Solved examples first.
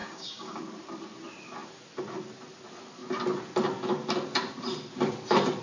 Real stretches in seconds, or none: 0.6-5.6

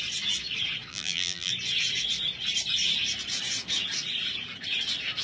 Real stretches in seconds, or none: 0.0-0.9; 1.5-5.2

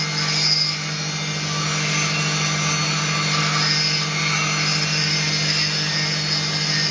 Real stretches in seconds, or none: 0.0-6.9